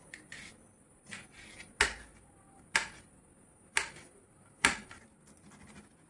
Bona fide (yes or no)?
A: yes